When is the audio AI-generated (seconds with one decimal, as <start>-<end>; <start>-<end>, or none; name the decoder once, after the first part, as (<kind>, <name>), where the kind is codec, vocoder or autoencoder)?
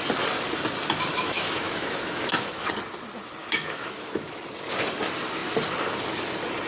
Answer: 1.1-2.7 (autoencoder, DAC-VAE); 3.4-4.3